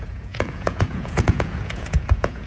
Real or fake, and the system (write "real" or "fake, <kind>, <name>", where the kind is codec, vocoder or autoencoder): fake, vocoder, Vocos